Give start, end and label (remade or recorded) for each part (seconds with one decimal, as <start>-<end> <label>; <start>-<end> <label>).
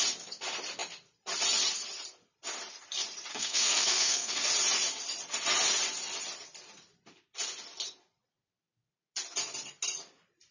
0.0-3.3 recorded; 3.3-4.5 remade; 4.5-10.5 recorded